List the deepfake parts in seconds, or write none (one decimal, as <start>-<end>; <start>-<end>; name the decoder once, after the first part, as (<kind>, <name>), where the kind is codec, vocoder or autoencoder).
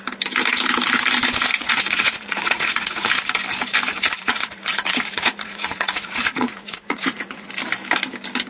1.5-3.1 (vocoder, Vocos); 3.9-7.5